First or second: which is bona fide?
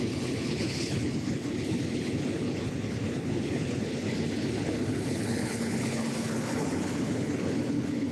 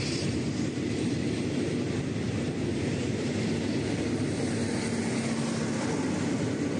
second